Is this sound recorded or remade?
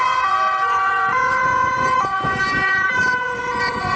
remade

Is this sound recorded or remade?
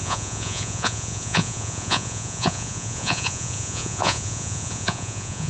remade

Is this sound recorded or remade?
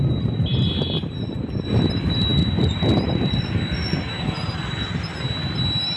recorded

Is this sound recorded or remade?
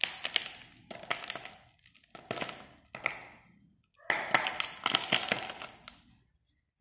recorded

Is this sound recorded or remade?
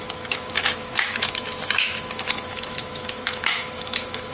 remade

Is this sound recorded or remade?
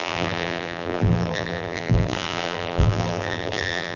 remade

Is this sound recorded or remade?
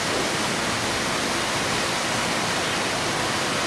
recorded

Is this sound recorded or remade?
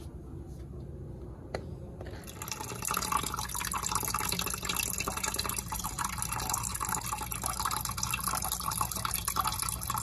recorded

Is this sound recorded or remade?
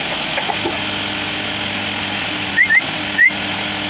recorded